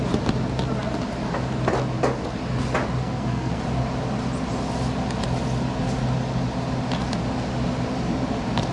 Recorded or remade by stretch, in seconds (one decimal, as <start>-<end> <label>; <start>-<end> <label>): 0.0-3.0 recorded; 3.0-3.6 remade; 3.6-8.7 recorded